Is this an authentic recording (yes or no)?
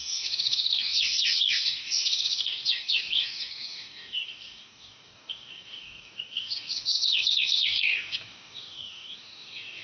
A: no